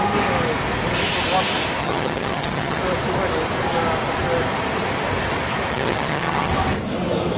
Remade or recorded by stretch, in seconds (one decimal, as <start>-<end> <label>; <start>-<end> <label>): 0.0-1.8 recorded; 1.8-2.8 remade; 2.8-5.7 recorded; 5.7-6.5 remade; 6.5-7.4 recorded